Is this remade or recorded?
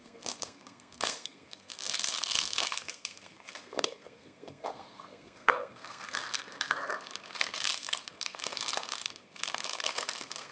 remade